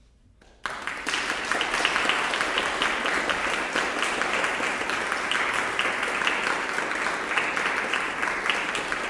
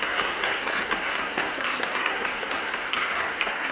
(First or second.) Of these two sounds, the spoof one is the second